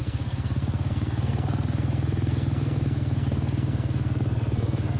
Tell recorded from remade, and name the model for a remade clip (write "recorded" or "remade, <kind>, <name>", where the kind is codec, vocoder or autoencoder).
remade, codec, SNAC